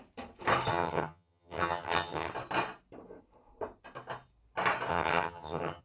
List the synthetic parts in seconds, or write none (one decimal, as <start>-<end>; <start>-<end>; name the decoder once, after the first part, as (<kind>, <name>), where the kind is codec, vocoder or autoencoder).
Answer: 0.7-2.3 (vocoder, HiFi-GAN); 4.9-5.8